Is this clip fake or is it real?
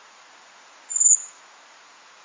fake